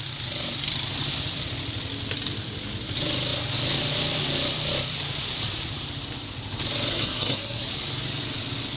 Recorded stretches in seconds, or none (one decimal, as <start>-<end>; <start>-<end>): 0.0-6.9; 7.7-8.8